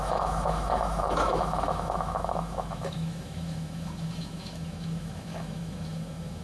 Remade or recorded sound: remade